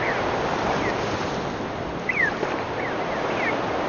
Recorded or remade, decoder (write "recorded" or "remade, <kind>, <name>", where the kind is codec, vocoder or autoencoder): recorded